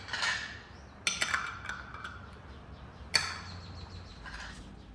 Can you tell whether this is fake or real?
real